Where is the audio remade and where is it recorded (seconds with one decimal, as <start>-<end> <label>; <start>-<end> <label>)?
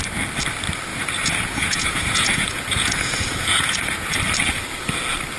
0.0-0.9 recorded; 0.9-4.1 remade; 4.1-5.4 recorded